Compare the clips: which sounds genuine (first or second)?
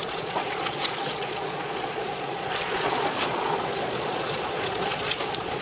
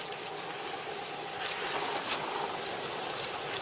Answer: second